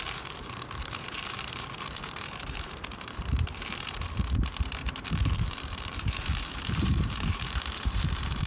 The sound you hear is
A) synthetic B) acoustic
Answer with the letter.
A